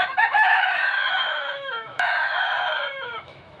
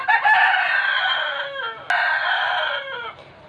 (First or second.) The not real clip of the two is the first